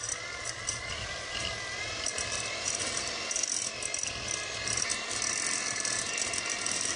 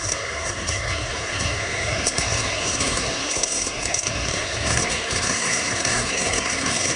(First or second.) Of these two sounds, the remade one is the second